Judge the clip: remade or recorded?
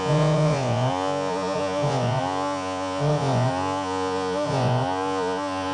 remade